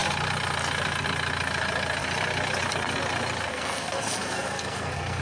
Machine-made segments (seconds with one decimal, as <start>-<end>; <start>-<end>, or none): 3.5-5.2